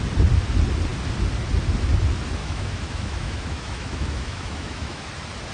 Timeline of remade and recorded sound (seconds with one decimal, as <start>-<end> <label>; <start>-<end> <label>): 0.0-2.4 recorded; 2.4-5.1 remade; 5.1-5.5 recorded